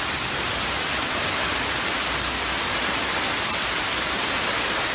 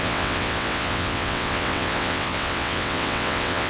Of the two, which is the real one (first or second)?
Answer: first